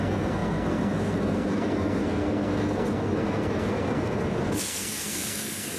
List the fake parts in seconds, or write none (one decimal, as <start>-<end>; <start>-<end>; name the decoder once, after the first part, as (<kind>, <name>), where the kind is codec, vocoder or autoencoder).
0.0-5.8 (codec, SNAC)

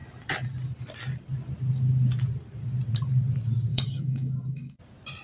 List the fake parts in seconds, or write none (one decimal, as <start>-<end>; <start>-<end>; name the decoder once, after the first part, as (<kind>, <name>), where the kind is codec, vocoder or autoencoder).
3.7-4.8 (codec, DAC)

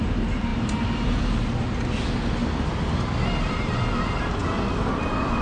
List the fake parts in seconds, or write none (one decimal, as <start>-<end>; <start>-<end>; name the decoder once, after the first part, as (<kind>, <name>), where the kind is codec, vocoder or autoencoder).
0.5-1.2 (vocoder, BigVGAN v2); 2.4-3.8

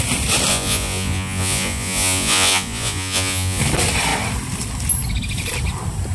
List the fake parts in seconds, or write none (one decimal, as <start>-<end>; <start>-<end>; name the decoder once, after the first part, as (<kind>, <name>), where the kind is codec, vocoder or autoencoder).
0.5-3.6 (vocoder, Vocos)

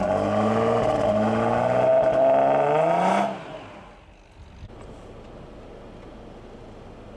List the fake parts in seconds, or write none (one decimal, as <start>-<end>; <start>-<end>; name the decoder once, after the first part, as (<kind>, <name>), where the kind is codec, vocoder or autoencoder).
none

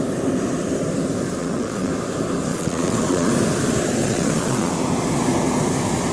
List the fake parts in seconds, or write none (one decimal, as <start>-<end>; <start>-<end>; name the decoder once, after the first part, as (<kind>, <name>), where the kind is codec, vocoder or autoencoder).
1.4-1.9 (vocoder, Vocos); 2.5-3.3; 4.0-4.7

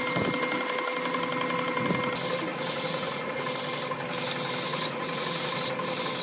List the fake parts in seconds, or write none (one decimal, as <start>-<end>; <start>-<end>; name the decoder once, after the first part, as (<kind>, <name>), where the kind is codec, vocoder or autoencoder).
2.5-3.4 (vocoder, Vocos); 4.7-5.5

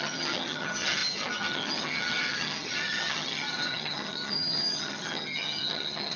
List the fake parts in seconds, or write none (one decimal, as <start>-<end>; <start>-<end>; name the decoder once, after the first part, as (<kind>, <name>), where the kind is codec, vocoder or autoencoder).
0.0-6.2 (vocoder, HiFi-GAN)